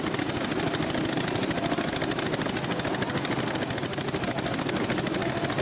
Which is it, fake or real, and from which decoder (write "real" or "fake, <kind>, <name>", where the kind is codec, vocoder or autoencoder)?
real